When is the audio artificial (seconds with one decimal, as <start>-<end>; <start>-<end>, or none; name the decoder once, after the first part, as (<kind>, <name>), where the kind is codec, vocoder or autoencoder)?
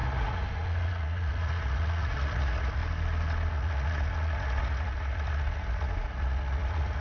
0.0-2.8 (vocoder, Vocos); 3.5-7.0